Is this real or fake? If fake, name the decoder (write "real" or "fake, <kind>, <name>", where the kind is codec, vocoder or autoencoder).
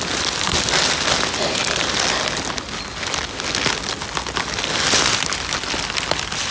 real